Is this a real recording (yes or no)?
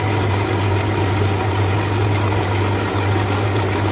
yes